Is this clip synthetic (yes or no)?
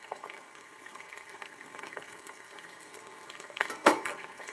yes